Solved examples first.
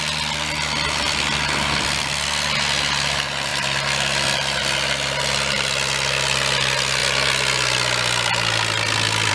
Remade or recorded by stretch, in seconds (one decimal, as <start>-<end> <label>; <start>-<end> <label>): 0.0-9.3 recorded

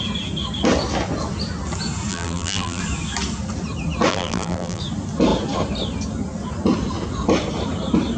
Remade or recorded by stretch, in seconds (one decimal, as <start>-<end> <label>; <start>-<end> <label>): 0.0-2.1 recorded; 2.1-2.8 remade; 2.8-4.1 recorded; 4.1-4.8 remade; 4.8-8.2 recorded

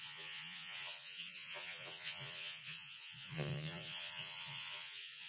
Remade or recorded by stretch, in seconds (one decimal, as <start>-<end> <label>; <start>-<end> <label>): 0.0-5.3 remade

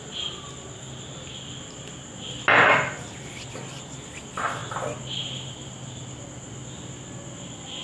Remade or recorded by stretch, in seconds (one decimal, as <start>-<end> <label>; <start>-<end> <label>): 0.0-7.8 recorded

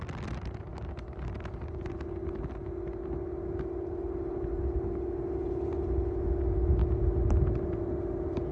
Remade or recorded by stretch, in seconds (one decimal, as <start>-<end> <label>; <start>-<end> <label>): 0.0-8.5 recorded

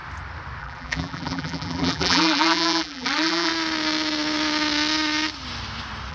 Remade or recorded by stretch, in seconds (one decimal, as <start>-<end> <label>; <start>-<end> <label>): 0.0-0.6 recorded; 0.6-3.5 remade; 3.5-6.1 recorded

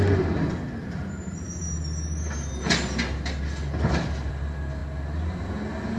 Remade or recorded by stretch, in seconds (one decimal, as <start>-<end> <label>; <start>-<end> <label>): 0.0-6.0 recorded